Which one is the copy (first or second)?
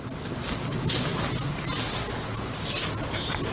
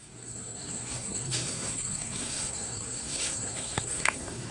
second